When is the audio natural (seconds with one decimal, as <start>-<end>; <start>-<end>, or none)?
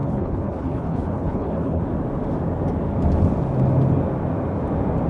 1.8-5.1